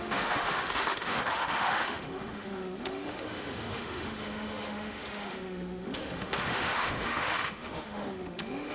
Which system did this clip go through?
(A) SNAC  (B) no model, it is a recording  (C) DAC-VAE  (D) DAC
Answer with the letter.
C